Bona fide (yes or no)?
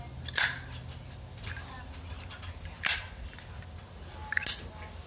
yes